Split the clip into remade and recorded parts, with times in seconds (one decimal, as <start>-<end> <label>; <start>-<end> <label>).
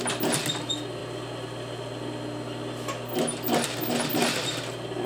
0.0-5.1 recorded